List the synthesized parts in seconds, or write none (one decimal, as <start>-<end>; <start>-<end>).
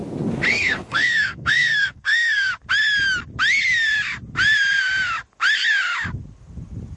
0.5-2.5